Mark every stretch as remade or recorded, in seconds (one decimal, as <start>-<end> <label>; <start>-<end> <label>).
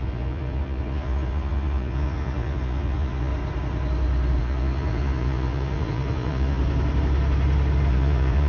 0.0-3.3 remade; 3.3-4.4 recorded; 4.4-6.6 remade; 6.6-7.9 recorded; 7.9-8.5 remade